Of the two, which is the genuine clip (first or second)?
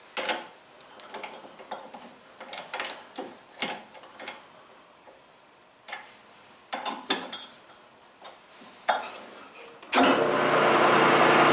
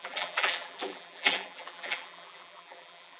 first